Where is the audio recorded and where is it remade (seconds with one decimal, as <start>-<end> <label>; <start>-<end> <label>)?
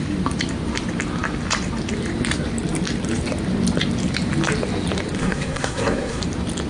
0.0-5.2 recorded; 5.2-6.2 remade; 6.2-6.7 recorded